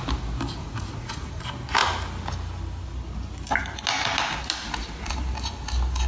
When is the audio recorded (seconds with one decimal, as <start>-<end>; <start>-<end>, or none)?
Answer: 0.0-0.6; 1.4-6.1